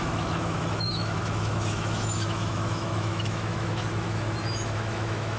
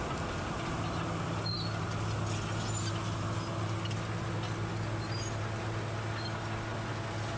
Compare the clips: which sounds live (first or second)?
second